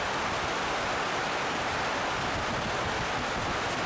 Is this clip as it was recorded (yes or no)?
yes